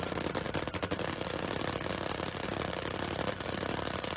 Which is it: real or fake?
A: real